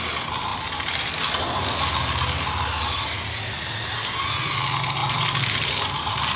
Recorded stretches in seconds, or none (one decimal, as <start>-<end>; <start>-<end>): 0.0-6.4

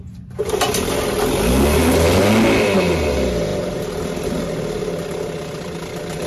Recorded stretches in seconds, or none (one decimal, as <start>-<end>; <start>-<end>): 0.0-6.3

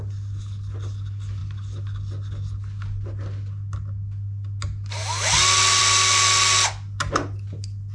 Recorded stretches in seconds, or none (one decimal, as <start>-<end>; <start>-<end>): 0.0-7.9

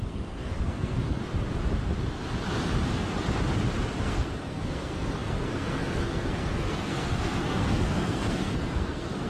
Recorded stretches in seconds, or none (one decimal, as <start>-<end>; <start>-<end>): 1.2-4.0